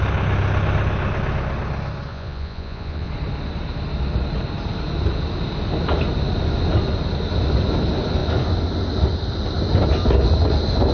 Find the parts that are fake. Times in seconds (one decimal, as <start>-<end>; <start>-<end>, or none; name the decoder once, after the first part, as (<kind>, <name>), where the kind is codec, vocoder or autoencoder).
2.1-3.1 (vocoder, Vocos)